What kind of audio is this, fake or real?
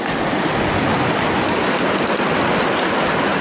real